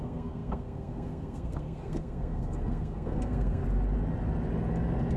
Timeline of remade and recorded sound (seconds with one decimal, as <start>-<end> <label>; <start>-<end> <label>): 0.0-3.6 remade; 3.6-5.2 recorded

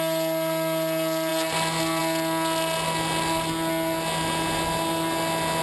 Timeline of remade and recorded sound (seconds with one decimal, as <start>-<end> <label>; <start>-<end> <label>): 0.0-5.6 recorded

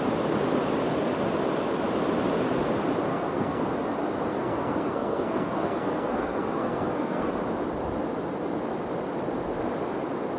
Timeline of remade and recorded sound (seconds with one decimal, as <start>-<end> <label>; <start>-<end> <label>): 0.0-3.1 recorded; 3.1-3.7 remade; 3.7-4.3 recorded; 4.3-7.3 remade; 7.3-10.4 recorded

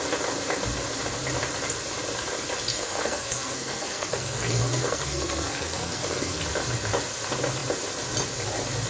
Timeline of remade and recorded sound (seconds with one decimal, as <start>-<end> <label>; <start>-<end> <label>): 0.0-2.7 recorded; 2.7-6.4 remade; 6.4-8.9 recorded

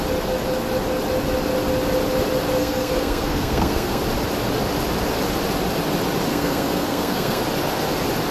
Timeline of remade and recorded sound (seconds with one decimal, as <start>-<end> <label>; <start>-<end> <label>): 0.0-2.6 recorded; 2.6-4.0 remade; 4.0-6.3 recorded; 6.3-7.4 remade; 7.4-8.3 recorded